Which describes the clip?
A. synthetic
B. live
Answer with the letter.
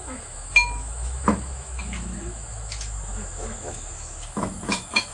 A